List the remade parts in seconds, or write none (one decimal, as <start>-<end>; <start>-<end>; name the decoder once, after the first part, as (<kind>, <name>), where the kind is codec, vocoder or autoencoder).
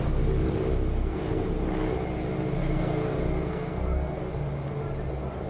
1.0-1.5 (codec, SNAC); 2.6-4.2